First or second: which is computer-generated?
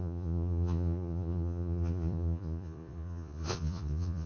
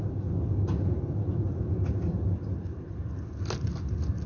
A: first